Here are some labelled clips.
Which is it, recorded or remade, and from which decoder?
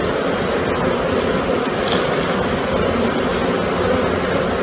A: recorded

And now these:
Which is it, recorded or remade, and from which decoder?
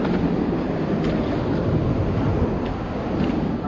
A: recorded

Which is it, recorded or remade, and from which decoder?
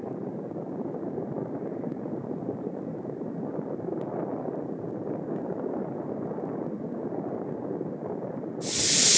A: recorded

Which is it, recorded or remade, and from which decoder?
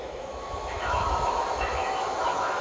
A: remade, autoencoder, DAC-VAE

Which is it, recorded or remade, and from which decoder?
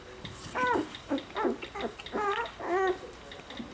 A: recorded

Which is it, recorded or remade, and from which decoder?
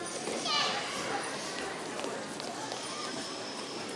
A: recorded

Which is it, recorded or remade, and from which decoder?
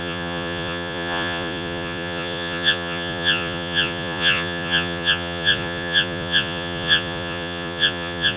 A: remade, vocoder, Vocos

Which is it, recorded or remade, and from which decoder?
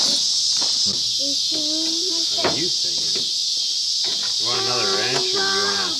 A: recorded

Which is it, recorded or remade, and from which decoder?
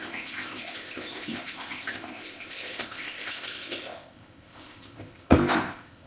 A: remade, codec, ZipCodec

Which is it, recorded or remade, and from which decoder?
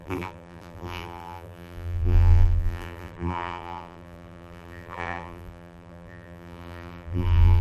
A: remade, vocoder, BigVGAN v2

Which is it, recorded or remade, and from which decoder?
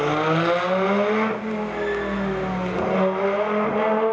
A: recorded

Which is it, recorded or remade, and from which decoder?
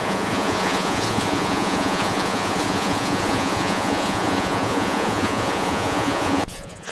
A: remade, vocoder, Vocos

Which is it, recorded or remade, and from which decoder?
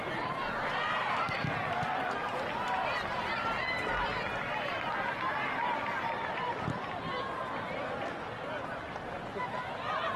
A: recorded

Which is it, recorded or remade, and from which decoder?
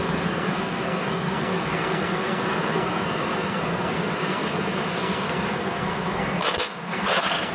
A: remade, codec, SNAC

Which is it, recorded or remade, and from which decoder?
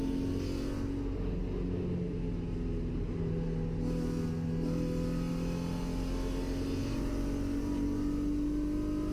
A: recorded